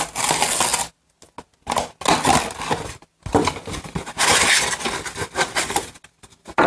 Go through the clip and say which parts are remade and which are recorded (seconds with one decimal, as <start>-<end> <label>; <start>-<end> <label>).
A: 0.0-6.7 recorded